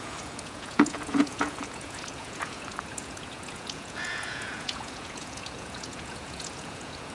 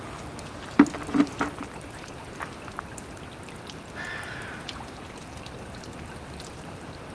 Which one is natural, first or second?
second